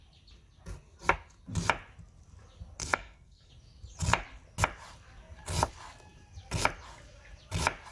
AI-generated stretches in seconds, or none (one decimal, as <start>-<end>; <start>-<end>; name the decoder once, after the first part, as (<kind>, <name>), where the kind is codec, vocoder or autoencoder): 2.8-3.5 (codec, SNAC)